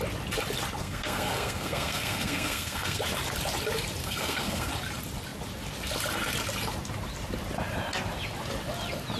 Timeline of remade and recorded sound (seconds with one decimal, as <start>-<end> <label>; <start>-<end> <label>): 0.0-0.8 recorded; 0.8-3.0 remade; 3.0-4.0 recorded; 4.0-4.7 remade; 4.7-9.2 recorded